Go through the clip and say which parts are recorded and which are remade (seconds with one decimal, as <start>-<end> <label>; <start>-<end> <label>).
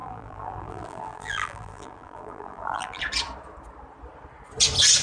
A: 0.0-3.0 remade; 3.0-5.0 recorded